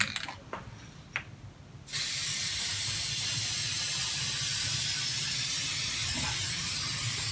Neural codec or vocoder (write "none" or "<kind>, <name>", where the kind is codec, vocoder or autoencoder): none